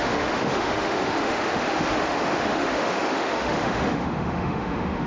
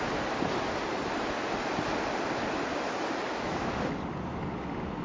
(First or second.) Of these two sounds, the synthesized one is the first